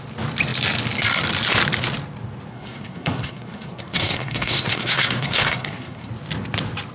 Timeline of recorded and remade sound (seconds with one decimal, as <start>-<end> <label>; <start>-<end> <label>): 0.0-2.5 recorded; 2.5-6.1 remade; 6.1-6.9 recorded